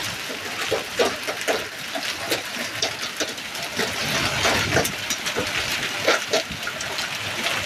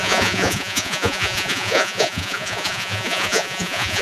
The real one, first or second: first